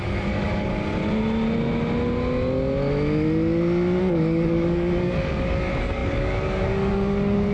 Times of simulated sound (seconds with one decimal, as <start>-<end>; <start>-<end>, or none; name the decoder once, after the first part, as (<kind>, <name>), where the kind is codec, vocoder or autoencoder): 0.0-0.7 (codec, DAC); 4.0-7.5